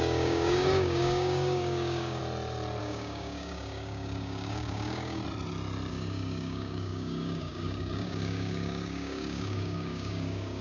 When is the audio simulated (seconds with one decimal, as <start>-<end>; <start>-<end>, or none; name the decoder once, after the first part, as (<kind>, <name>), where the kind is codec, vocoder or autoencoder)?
0.0-2.2 (codec, DAC); 2.8-5.2; 5.9-10.6